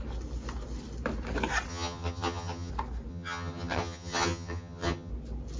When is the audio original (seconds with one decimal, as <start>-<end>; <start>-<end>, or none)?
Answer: 0.0-1.7; 2.7-3.1; 5.1-5.6